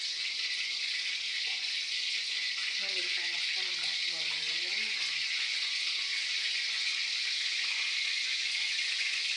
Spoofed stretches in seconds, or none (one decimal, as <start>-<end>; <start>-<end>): 0.0-6.9; 7.5-9.4